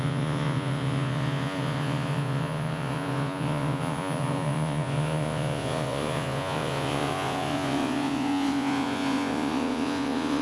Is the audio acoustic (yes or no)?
no